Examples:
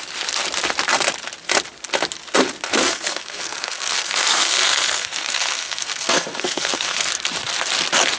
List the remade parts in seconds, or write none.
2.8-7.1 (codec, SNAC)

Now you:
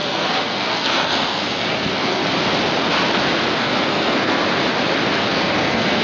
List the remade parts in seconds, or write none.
0.0-2.2 (codec, SNAC); 3.5-4.4; 5.1-6.0